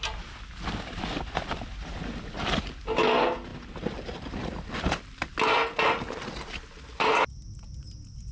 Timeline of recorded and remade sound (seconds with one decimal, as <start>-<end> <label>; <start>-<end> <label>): 0.0-8.3 recorded